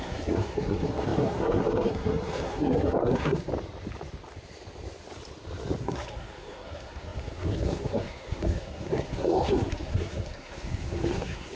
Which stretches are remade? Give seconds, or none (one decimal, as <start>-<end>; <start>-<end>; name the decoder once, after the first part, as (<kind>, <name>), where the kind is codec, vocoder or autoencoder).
0.0-3.5 (codec, SNAC); 5.8-11.6